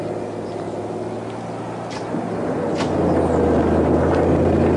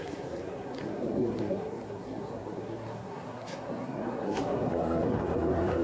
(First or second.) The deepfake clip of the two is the second